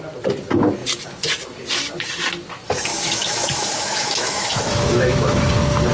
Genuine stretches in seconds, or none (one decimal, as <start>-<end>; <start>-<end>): 0.0-2.9; 5.4-5.9